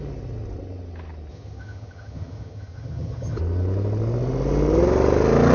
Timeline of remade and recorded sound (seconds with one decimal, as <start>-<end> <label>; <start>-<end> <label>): 0.0-1.3 recorded; 1.3-3.4 remade; 3.4-5.5 recorded